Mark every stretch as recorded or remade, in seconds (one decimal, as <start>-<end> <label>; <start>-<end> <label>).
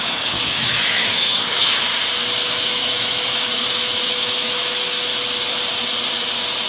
0.0-1.9 remade; 1.9-2.4 recorded; 2.4-5.1 remade; 5.1-6.7 recorded